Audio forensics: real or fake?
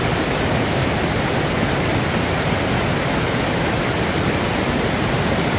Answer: real